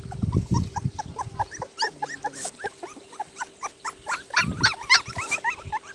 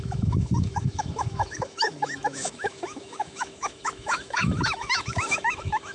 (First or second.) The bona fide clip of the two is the first